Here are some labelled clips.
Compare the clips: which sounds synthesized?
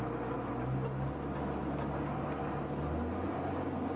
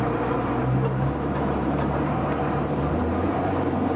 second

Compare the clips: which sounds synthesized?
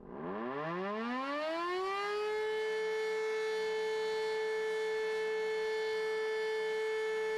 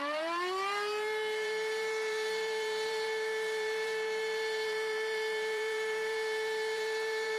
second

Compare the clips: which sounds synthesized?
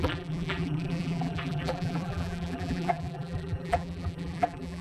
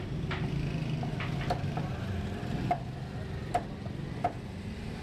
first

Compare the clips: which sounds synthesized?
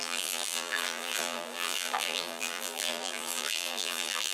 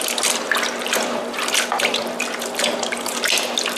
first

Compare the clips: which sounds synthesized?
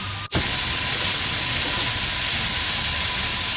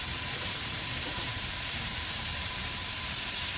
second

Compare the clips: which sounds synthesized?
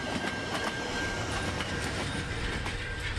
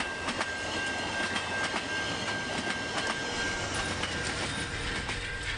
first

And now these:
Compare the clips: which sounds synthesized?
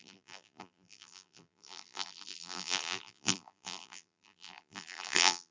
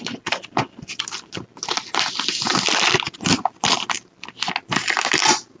first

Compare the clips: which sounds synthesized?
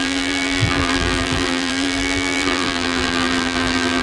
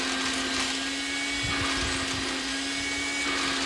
first